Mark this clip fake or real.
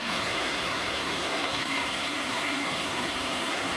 fake